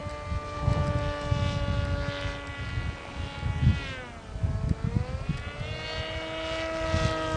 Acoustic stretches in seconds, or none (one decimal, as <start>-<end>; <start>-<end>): 0.0-7.4